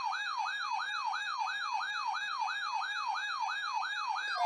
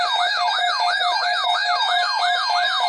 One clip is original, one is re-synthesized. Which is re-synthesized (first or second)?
second